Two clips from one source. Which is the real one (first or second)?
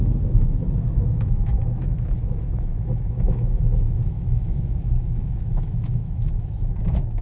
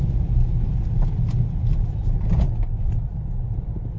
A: second